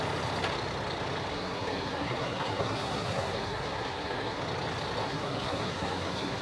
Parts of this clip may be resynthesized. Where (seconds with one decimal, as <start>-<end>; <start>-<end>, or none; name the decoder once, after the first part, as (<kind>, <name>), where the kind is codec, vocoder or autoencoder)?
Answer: 1.3-4.4 (codec, SNAC); 5.0-6.4